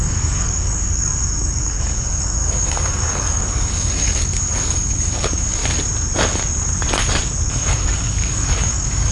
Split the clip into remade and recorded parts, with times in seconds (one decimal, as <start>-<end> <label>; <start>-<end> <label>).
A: 0.0-5.6 remade; 5.6-7.5 recorded; 7.5-9.1 remade